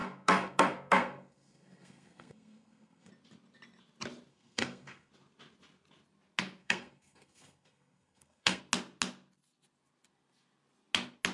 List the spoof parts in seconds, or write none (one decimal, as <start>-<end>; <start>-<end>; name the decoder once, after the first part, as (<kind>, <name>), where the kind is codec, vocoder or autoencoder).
0.0-3.1 (codec, SNAC); 4.3-5.1; 6.6-8.6